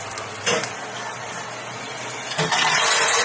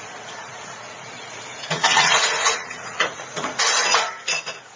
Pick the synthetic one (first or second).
second